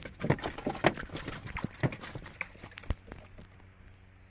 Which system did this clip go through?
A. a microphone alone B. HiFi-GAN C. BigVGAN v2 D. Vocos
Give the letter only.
A